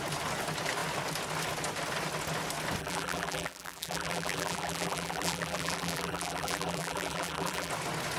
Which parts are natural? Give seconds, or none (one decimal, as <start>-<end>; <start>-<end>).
0.0-2.8; 7.7-8.2